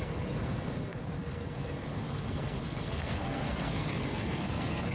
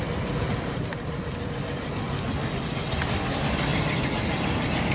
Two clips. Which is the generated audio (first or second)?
first